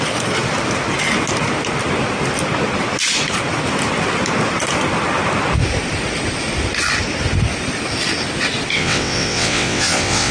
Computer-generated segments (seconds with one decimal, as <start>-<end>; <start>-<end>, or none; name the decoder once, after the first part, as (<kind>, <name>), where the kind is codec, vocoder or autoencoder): 8.7-10.3 (vocoder, WaveNeXt)